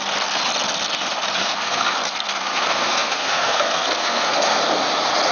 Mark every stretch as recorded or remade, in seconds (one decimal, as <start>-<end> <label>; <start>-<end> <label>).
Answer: 0.0-1.4 recorded; 1.4-4.6 remade; 4.6-5.3 recorded